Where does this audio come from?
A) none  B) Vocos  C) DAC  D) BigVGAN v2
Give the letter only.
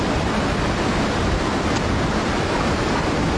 A